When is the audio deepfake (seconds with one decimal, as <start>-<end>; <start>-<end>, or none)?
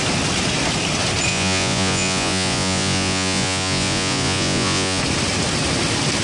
1.3-5.0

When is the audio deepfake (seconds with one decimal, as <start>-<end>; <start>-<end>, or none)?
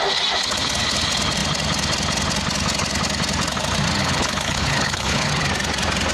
4.0-5.3